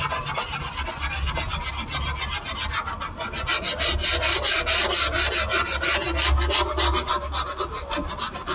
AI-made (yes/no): no